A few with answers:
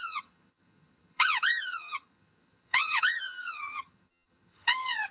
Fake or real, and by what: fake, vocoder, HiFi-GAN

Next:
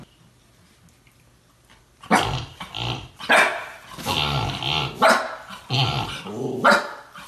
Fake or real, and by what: real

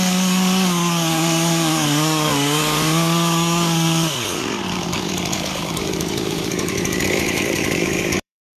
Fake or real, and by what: fake, codec, DAC